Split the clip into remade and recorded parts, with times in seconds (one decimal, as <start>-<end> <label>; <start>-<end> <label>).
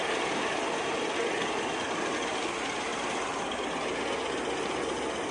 0.0-5.3 recorded